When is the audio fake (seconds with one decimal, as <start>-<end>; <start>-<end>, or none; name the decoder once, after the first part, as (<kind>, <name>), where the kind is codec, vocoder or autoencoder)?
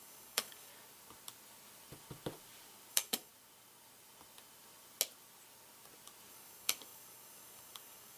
0.0-0.7 (codec, DAC); 2.9-3.3; 6.3-8.2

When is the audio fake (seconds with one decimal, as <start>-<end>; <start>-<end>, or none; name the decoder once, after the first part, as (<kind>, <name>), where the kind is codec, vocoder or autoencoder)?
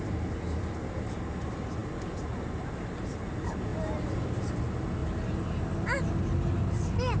3.7-4.6 (vocoder, BigVGAN v2)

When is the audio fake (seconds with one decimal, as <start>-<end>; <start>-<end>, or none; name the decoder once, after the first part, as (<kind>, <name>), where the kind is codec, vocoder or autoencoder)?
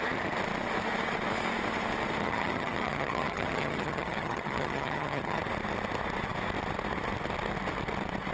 2.2-5.4 (vocoder, HiFi-GAN)